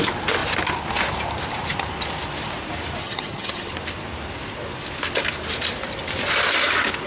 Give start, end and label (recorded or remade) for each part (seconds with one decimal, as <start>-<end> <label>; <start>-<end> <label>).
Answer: 0.0-3.0 recorded; 3.0-3.7 remade; 3.7-7.1 recorded